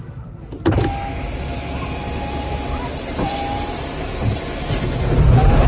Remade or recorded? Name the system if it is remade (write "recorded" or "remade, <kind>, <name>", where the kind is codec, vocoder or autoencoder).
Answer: recorded